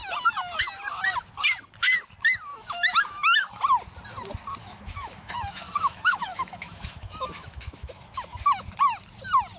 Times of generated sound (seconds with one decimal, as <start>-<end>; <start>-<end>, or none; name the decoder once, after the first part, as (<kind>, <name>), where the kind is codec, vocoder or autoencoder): 2.5-3.6 (autoencoder, DAC-VAE); 4.6-8.7

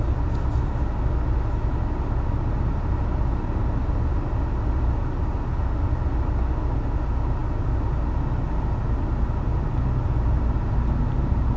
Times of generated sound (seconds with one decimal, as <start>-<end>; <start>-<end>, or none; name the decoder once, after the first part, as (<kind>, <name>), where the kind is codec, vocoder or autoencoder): none

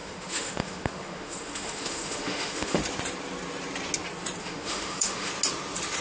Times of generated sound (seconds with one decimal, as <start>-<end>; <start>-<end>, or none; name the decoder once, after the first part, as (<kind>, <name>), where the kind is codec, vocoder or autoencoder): 0.0-2.8 (autoencoder, DAC-VAE); 4.4-5.3

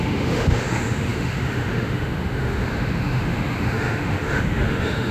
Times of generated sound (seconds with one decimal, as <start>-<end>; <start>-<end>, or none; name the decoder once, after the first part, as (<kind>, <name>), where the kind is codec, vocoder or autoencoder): 0.0-5.1 (autoencoder, DAC-VAE)

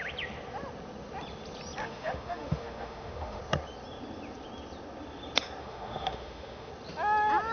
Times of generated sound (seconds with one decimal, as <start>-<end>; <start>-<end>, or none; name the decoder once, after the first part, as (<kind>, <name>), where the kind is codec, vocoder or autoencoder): 1.8-3.4 (autoencoder, DAC-VAE); 5.6-6.7

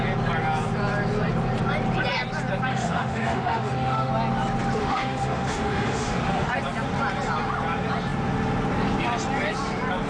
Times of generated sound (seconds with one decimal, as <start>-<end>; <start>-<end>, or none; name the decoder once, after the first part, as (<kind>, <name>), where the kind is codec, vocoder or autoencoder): 2.7-4.1 (autoencoder, DAC-VAE); 4.8-6.5

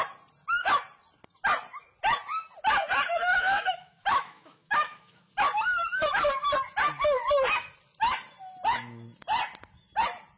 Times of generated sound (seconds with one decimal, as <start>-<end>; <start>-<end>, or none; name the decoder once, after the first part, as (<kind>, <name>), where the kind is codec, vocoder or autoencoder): 3.3-5.2 (autoencoder, DAC-VAE)

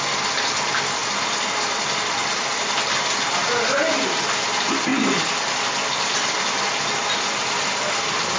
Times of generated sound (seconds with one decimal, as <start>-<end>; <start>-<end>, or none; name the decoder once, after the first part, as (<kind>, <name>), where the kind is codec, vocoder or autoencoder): none